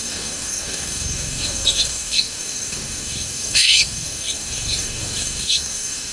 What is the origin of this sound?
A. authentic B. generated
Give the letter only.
B